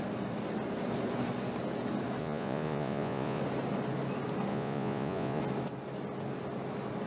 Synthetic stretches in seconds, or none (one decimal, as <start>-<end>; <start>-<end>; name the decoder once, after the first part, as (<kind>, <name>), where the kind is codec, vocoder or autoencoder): 2.2-3.4 (vocoder, Vocos); 4.5-5.4